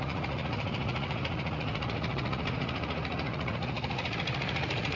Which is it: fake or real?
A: fake